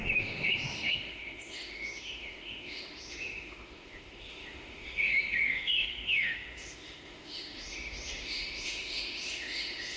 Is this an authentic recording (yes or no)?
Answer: no